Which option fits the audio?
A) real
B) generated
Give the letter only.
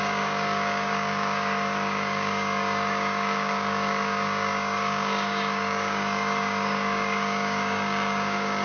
B